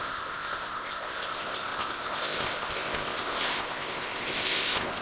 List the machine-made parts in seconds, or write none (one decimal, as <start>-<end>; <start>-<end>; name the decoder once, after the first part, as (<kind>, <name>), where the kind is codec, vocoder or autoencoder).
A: 0.0-5.0 (codec, ZipCodec)